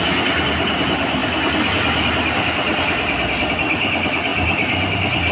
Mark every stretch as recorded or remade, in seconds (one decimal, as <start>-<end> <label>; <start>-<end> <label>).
0.0-5.3 recorded